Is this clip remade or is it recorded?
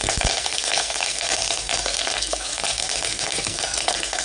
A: remade